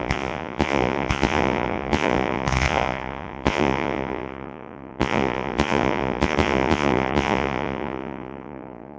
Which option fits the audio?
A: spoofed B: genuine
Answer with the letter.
A